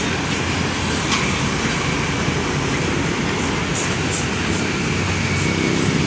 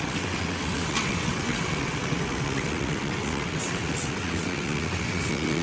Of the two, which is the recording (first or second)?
first